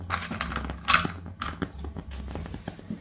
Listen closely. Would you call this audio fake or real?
real